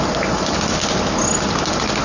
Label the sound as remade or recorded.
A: recorded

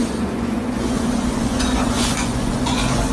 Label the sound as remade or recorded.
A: remade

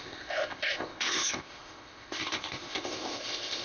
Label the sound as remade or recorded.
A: remade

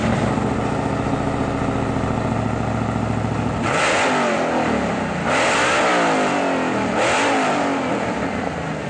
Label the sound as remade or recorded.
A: recorded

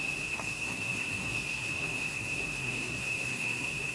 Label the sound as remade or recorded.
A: remade